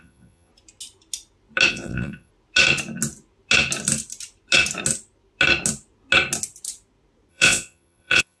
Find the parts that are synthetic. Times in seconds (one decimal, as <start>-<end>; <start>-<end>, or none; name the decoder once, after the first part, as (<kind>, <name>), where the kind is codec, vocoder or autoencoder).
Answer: 0.0-0.5 (vocoder, Vocos); 1.7-2.3; 7.3-8.4